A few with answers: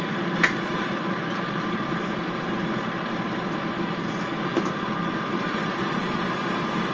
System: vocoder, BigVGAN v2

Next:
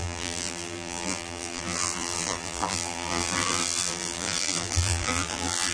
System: vocoder, BigVGAN v2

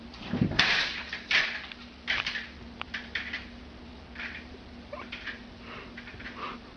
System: vocoder, BigVGAN v2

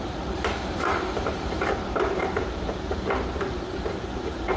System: vocoder, BigVGAN v2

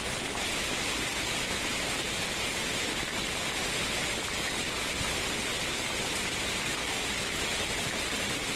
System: none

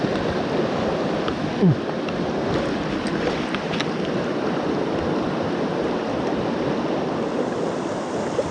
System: none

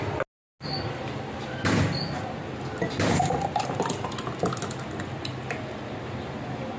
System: none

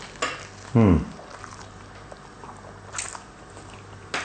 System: none